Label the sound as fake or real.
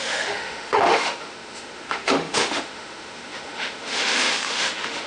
fake